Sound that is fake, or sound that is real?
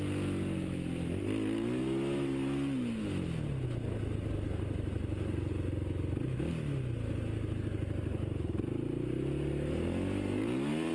real